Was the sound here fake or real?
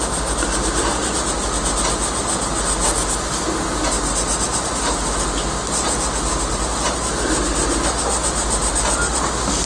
real